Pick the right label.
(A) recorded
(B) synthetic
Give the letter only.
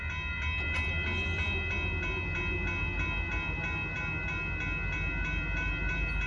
A